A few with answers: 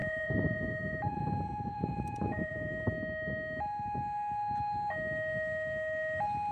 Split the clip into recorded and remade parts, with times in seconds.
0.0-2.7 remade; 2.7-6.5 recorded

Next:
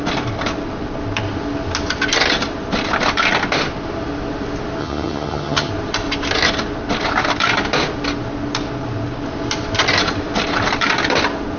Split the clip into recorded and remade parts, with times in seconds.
0.0-4.8 recorded; 4.8-5.7 remade; 5.7-11.6 recorded